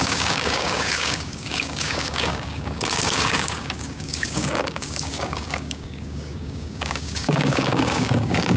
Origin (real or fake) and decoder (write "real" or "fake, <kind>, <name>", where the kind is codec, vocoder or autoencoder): fake, codec, DAC